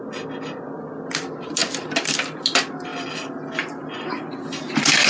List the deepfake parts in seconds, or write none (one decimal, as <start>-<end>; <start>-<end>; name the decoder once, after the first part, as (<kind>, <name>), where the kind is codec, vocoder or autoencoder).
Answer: none

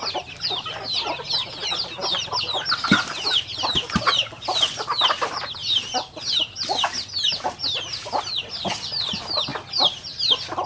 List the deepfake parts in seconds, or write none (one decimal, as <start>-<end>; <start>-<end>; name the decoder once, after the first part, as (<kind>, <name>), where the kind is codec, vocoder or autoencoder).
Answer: none

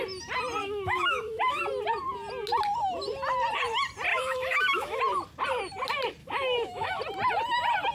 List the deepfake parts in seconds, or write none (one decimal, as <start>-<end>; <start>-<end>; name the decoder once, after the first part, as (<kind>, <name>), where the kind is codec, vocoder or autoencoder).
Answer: 0.6-1.6 (autoencoder, DAC-VAE); 4.1-5.0; 6.2-7.0

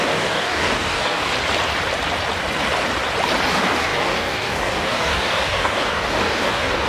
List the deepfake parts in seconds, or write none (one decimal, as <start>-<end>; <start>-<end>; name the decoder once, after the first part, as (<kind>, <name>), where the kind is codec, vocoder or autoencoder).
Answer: 0.0-1.3 (codec, DAC); 3.5-6.9